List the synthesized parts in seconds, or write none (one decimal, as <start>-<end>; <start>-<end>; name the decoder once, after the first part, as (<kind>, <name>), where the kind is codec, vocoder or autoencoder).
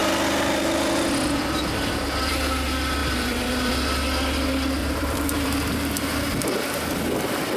3.0-3.7 (vocoder, BigVGAN v2); 4.8-5.7